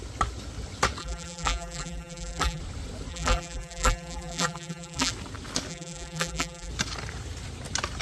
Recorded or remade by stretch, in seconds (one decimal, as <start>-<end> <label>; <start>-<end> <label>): 0.0-1.0 recorded; 1.0-2.6 remade; 2.6-3.1 recorded; 3.1-5.1 remade; 5.1-5.7 recorded; 5.7-6.7 remade; 6.7-8.0 recorded